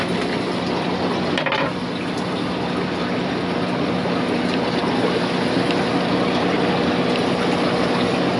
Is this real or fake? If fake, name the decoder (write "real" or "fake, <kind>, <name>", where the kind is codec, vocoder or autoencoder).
real